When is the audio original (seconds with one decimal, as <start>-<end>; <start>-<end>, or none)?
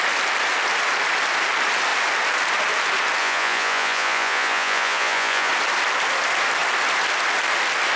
0.0-3.2; 5.5-8.0